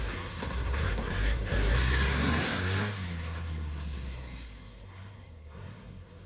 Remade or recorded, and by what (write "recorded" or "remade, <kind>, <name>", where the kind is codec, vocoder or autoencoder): remade, codec, SNAC